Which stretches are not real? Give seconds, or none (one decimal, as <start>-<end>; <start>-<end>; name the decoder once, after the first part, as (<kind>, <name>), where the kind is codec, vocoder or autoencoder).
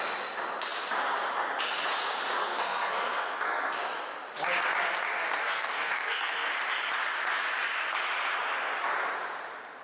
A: 2.4-3.8 (codec, SNAC); 5.4-6.5